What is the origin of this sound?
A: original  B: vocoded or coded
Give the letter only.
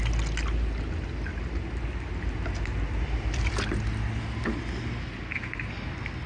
A